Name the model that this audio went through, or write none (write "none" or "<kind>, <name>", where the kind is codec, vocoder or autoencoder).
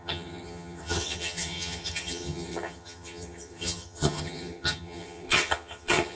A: vocoder, HiFi-GAN